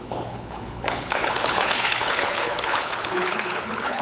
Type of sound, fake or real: fake